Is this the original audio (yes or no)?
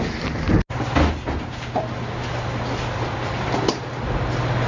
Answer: yes